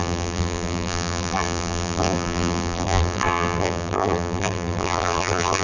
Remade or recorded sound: remade